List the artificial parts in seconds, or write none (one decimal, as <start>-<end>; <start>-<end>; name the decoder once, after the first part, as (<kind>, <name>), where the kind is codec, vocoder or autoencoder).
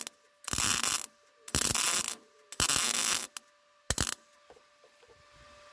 none